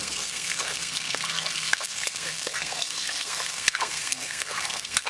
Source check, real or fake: fake